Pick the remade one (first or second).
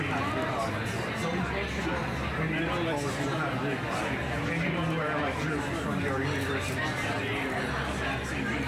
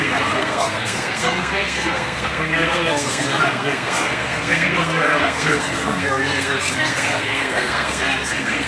second